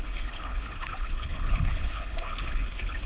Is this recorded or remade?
remade